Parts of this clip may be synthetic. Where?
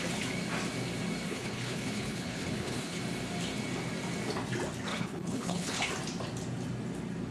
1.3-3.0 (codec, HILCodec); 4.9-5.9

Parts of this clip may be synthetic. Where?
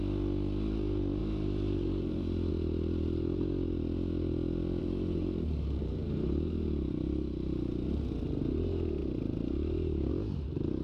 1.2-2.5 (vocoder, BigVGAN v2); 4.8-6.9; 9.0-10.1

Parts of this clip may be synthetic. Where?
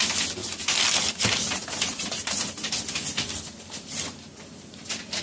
none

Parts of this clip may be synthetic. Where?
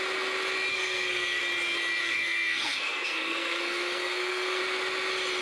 0.7-1.4 (codec, SNAC); 2.0-4.6